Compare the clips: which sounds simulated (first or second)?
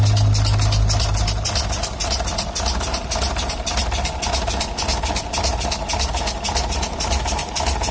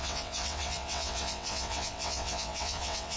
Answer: second